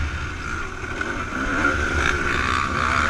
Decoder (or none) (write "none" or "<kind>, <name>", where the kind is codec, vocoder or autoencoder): none